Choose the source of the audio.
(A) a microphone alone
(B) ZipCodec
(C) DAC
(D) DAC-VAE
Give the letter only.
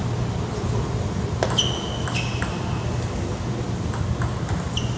A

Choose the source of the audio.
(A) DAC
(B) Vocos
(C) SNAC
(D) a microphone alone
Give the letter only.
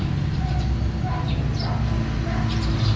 D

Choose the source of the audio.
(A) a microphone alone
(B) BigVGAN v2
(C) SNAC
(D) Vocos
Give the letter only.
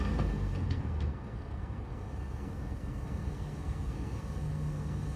C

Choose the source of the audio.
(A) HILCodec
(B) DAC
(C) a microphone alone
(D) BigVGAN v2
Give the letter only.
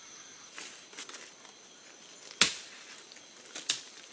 C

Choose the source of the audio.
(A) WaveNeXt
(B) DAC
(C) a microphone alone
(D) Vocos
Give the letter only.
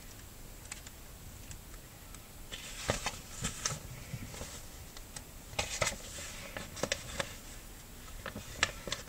C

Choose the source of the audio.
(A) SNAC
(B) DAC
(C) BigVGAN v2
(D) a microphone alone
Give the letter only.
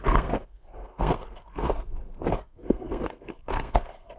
A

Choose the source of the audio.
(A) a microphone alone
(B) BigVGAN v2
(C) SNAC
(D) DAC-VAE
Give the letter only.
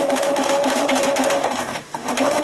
D